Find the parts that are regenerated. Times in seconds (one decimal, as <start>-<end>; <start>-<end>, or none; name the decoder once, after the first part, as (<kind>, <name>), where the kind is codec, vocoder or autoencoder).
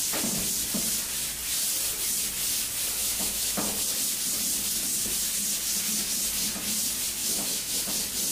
3.0-3.6 (autoencoder, DAC-VAE); 7.2-7.8